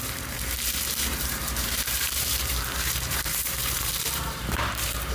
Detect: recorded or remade remade